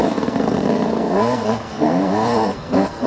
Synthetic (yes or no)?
yes